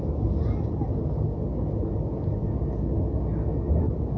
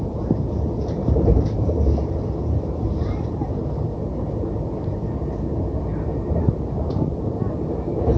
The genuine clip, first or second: first